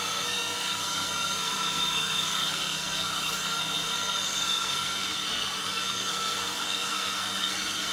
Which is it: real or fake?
fake